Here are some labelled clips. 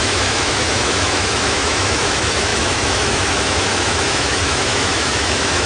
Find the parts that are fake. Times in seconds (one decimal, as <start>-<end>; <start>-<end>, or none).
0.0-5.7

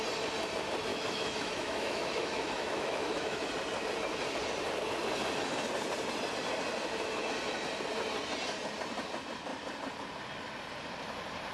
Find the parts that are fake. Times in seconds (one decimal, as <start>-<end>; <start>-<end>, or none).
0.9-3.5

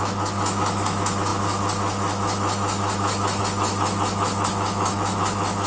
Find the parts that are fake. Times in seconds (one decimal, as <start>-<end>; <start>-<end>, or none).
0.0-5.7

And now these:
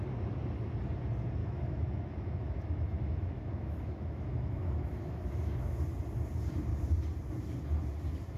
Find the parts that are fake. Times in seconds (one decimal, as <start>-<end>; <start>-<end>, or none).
1.4-5.8

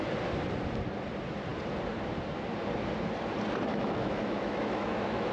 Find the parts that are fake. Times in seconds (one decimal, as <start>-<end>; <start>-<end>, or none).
3.7-5.3

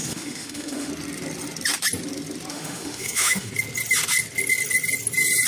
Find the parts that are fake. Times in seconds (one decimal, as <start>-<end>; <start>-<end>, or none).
0.0-0.9; 2.5-3.5

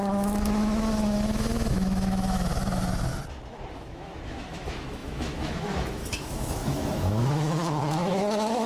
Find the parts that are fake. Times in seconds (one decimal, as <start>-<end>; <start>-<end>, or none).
0.0-3.1; 3.7-8.7

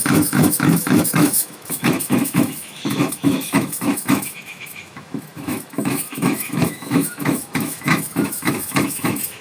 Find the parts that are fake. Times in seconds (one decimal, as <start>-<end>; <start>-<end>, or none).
0.0-9.4